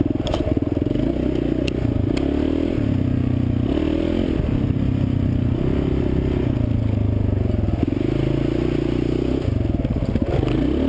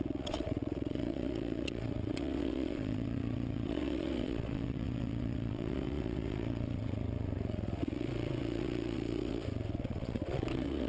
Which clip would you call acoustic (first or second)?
first